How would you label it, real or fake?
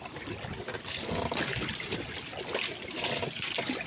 real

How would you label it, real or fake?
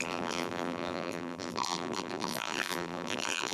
fake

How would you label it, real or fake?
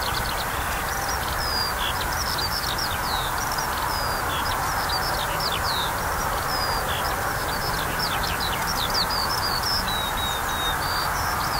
real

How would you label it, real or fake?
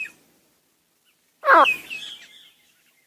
real